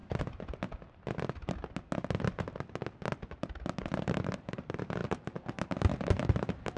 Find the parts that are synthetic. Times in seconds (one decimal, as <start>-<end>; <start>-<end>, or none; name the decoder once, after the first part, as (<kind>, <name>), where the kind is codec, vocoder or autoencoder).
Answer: 4.0-6.8 (vocoder, BigVGAN v2)